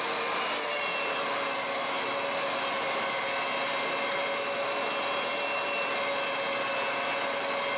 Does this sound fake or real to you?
real